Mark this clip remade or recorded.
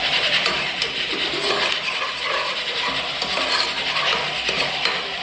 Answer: recorded